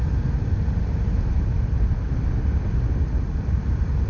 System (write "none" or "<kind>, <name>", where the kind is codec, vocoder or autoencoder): none